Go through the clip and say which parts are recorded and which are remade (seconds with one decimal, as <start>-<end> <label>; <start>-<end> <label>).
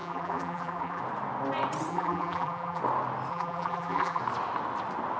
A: 0.0-1.0 remade; 1.0-1.9 recorded; 1.9-2.8 remade; 2.8-3.3 recorded; 3.3-4.2 remade; 4.2-5.2 recorded